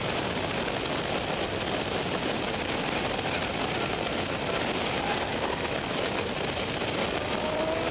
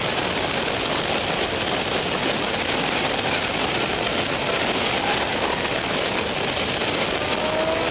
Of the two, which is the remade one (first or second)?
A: first